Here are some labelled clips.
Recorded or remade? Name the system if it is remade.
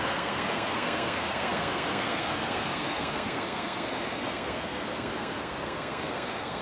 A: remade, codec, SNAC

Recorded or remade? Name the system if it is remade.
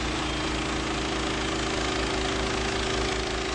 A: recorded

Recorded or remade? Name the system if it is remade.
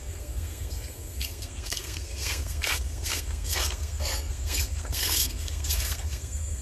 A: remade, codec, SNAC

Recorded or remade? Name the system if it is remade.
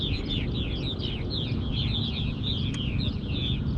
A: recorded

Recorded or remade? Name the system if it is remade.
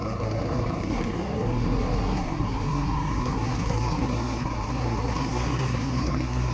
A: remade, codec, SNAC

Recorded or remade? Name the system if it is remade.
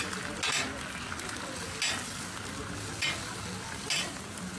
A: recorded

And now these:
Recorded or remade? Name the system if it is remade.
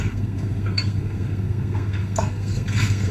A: remade, codec, SNAC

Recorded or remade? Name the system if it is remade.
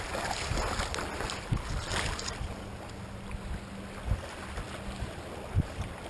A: recorded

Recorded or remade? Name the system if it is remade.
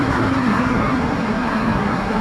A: remade, codec, SNAC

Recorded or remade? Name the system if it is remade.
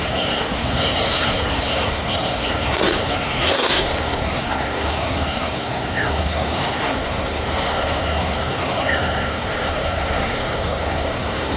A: remade, codec, SNAC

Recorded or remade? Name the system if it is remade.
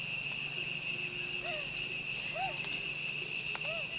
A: recorded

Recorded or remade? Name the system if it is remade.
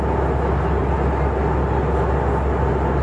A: recorded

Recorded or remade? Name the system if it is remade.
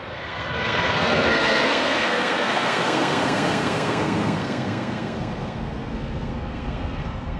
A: remade, codec, SNAC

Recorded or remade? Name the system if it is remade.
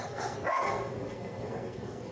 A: remade, codec, SNAC